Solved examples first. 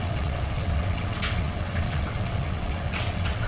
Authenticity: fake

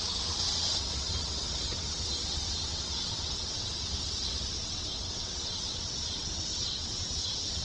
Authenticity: fake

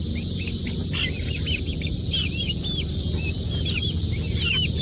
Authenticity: real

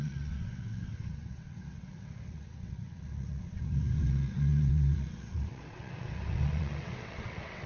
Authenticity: fake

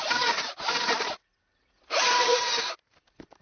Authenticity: real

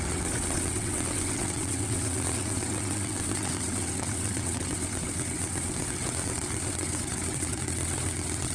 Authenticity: fake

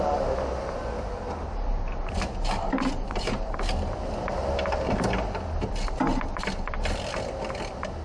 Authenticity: real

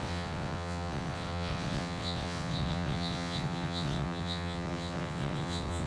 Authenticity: fake